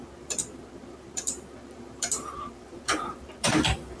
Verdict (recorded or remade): remade